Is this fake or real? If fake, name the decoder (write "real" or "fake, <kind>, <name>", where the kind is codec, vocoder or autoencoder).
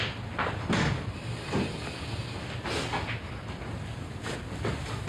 real